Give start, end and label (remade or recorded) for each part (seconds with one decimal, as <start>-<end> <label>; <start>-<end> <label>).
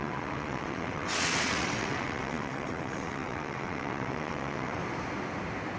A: 0.0-4.8 remade; 4.8-5.8 recorded